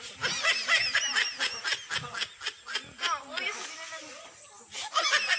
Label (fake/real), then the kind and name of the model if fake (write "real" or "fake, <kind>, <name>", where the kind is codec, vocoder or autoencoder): real